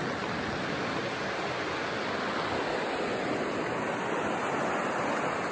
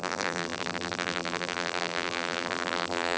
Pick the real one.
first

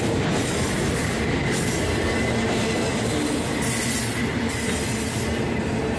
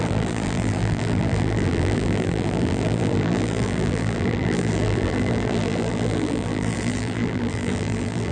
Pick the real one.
first